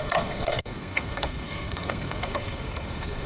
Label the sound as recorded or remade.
remade